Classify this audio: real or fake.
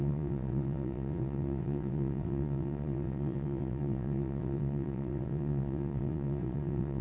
fake